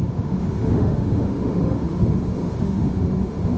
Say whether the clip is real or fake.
fake